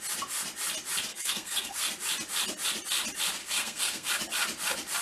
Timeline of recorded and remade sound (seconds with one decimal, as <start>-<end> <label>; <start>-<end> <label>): 0.0-1.1 recorded; 1.1-1.9 remade; 1.9-3.4 recorded; 3.4-4.1 remade; 4.1-5.0 recorded